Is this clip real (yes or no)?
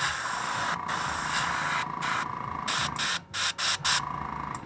yes